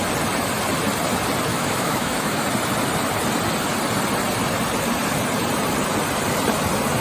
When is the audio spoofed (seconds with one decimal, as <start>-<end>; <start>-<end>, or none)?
1.5-2.5